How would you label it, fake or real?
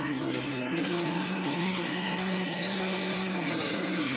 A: fake